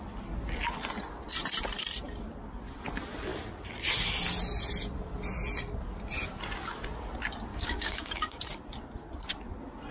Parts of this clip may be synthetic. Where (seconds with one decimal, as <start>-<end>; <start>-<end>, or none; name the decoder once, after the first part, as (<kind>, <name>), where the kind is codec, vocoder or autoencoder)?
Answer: 7.5-8.4 (codec, DAC)